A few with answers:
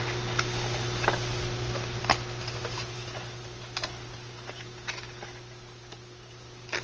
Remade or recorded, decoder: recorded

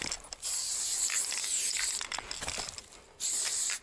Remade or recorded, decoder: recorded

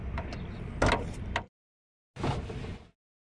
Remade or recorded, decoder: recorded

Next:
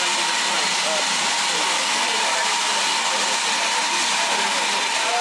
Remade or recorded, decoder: recorded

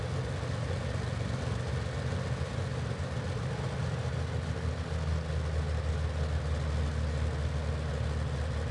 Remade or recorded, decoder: recorded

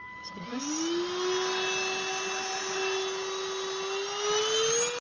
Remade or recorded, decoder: recorded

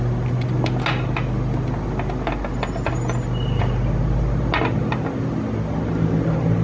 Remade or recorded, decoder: recorded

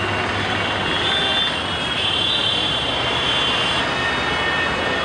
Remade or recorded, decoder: recorded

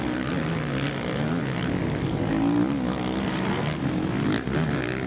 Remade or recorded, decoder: recorded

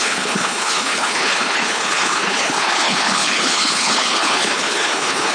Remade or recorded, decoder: remade, codec, HILCodec